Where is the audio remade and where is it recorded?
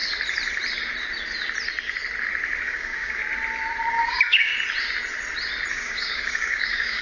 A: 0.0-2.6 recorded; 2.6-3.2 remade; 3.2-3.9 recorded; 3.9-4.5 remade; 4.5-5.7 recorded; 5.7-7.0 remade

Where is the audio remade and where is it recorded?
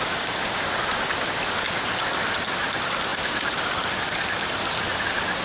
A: 0.0-5.4 recorded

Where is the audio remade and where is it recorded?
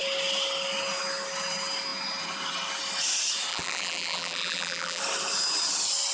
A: 0.0-3.5 recorded; 3.5-5.0 remade; 5.0-6.1 recorded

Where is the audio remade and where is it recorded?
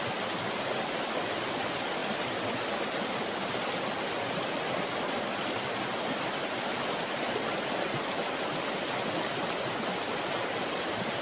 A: 0.0-11.2 recorded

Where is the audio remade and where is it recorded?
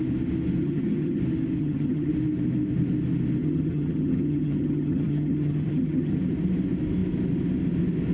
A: 0.0-0.6 recorded; 0.6-1.2 remade; 1.2-1.6 recorded; 1.6-2.1 remade; 2.1-3.4 recorded; 3.4-6.1 remade; 6.1-8.1 recorded